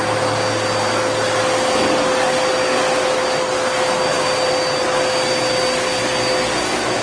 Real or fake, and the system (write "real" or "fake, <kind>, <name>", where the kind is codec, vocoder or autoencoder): real